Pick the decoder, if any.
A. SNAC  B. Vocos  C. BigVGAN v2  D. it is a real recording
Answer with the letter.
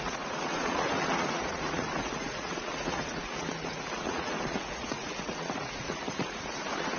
B